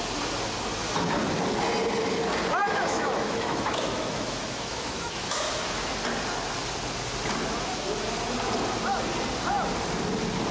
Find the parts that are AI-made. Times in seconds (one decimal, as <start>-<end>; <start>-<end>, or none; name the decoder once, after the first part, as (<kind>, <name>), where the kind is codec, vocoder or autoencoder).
2.6-5.9 (autoencoder, DAC-VAE)